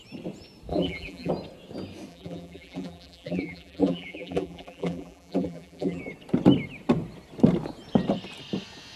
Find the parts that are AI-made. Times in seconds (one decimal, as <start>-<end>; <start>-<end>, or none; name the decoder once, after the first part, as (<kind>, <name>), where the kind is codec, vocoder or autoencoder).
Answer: 0.7-1.3 (vocoder, BigVGAN v2); 2.1-6.0